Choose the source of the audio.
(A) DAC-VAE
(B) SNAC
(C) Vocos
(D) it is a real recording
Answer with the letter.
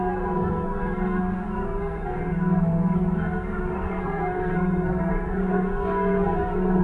B